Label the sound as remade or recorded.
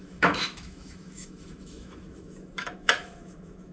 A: remade